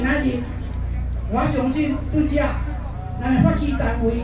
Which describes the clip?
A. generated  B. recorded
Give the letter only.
B